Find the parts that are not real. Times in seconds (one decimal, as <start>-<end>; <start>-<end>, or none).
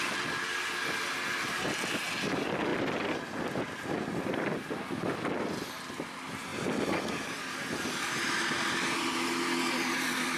none